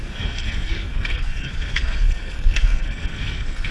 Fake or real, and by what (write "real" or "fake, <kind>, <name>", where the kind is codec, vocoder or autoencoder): fake, codec, SNAC